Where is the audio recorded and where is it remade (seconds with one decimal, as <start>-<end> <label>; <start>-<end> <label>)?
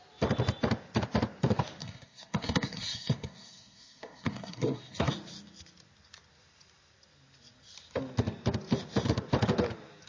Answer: 0.0-1.8 recorded; 1.8-5.1 remade; 5.1-10.1 recorded